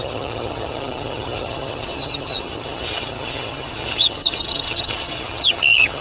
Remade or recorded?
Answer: remade